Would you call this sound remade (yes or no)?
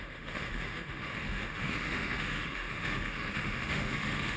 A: yes